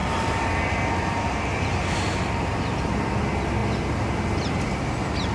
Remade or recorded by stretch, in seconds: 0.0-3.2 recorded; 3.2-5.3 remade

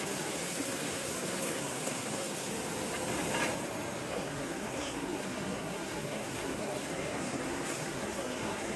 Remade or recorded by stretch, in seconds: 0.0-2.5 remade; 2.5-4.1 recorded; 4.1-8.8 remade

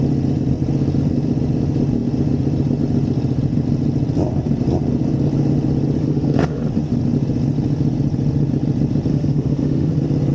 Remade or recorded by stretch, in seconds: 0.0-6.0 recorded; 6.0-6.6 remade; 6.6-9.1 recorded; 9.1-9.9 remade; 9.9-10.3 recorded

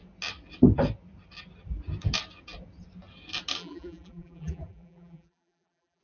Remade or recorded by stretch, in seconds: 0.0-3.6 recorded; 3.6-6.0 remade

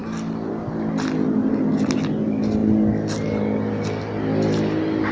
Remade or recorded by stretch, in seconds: 0.0-5.1 recorded

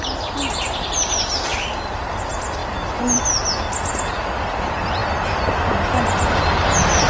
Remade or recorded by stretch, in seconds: 0.0-1.5 recorded; 1.5-2.2 remade; 2.2-7.1 recorded

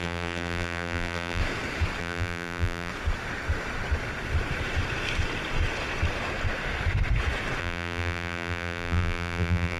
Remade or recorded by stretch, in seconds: 0.0-1.4 remade; 1.4-2.0 recorded; 2.0-2.9 remade; 2.9-7.6 recorded; 7.6-9.8 remade